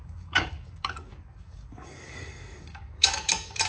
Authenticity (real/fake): fake